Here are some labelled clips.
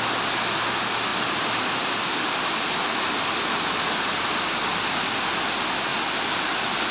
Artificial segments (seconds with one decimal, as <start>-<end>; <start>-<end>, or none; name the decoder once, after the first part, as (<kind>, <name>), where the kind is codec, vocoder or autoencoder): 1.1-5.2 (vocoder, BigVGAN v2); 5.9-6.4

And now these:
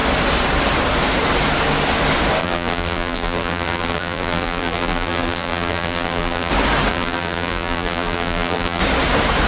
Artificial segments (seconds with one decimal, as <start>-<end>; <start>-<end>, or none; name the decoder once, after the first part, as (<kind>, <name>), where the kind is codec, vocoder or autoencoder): 2.4-6.5 (vocoder, BigVGAN v2); 6.9-8.8

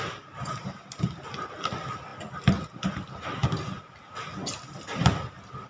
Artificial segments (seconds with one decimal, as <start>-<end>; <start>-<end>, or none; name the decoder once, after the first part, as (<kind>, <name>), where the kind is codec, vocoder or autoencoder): none